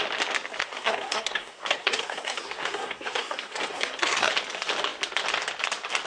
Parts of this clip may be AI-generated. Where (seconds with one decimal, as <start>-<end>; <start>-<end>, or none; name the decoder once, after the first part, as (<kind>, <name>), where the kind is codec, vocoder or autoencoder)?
0.6-4.3 (codec, SNAC)